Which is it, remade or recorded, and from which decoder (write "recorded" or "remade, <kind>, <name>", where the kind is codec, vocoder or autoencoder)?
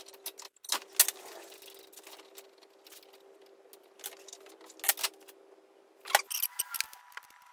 recorded